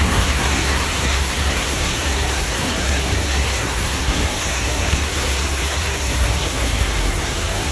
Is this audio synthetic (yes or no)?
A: yes